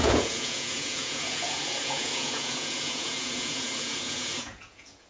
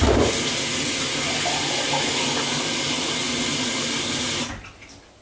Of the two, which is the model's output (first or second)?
first